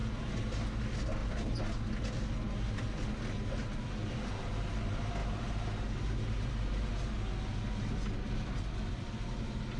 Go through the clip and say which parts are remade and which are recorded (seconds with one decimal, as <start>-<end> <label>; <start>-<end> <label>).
0.0-9.8 recorded